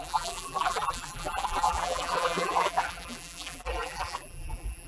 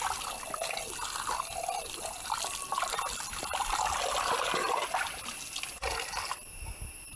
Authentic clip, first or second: second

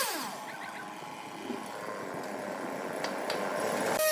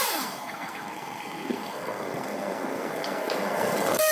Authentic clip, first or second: first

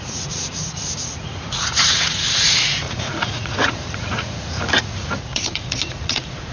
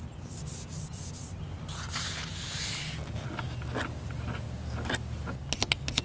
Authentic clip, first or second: second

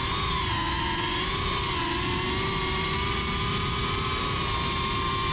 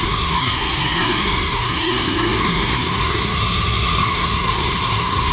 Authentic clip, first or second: first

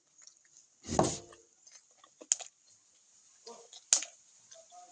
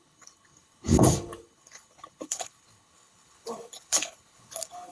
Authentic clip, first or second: first